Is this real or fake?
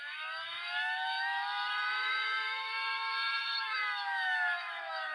fake